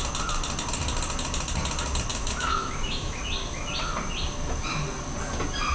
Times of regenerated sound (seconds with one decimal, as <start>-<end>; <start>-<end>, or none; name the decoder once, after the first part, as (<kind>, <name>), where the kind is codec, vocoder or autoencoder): 2.1-3.2 (autoencoder, DAC-VAE)

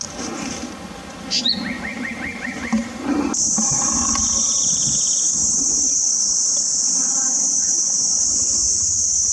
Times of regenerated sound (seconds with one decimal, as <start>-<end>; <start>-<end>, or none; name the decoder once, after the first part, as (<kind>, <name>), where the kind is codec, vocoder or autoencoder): 1.9-6.6 (vocoder, BigVGAN v2)

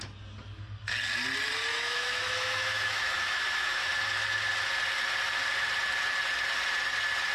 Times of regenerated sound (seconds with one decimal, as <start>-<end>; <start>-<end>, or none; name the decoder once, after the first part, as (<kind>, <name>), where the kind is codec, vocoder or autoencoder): 1.7-3.9 (autoencoder, DAC-VAE)

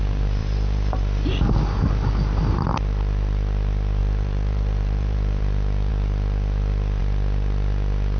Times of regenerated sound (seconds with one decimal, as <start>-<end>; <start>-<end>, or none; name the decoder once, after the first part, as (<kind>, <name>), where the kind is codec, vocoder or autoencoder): 0.4-1.0 (vocoder, BigVGAN v2); 4.0-5.4

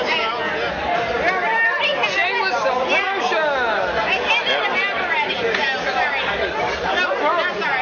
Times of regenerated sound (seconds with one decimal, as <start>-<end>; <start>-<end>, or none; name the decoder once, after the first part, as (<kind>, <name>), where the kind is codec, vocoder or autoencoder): none